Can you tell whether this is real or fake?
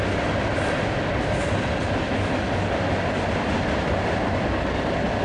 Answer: real